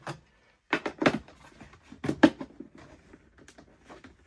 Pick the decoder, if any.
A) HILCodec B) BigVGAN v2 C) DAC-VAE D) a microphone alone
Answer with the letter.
D